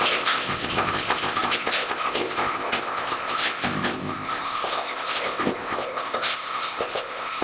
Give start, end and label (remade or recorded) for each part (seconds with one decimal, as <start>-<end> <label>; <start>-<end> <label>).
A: 0.0-7.4 remade